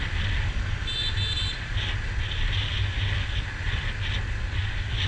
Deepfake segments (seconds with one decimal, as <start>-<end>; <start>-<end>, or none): none